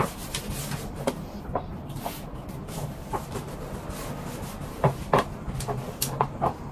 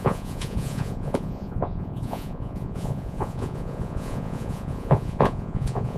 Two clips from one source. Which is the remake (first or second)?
second